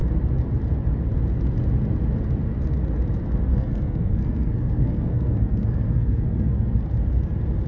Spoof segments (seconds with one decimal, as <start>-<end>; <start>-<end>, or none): 3.5-6.8